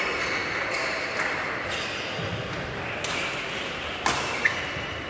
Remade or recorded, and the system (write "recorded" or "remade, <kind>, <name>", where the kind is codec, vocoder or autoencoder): recorded